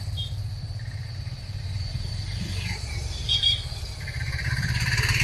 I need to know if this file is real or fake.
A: fake